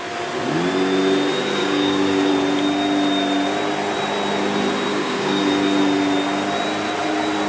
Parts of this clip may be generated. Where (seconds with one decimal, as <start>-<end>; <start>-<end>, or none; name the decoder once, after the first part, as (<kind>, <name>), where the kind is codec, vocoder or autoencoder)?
1.6-2.3 (codec, DAC); 4.9-5.4